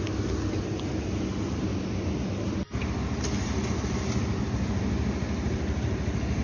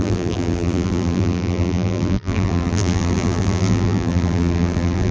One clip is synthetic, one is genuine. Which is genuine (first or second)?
first